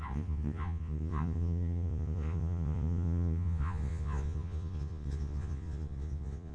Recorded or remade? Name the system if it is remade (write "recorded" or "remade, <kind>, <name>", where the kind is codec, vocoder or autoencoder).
remade, vocoder, Vocos